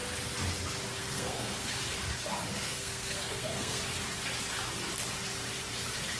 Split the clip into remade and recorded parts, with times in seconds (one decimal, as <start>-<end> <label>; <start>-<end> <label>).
0.0-1.0 recorded; 1.0-1.8 remade; 1.8-2.5 recorded; 2.5-3.8 remade; 3.8-6.2 recorded